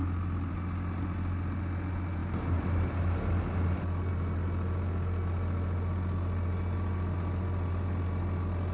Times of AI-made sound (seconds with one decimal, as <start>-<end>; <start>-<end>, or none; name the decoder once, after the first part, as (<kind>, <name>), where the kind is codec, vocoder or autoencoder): none